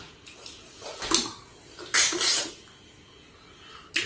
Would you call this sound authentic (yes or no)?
yes